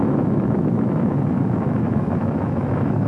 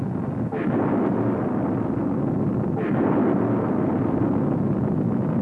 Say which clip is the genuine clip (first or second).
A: second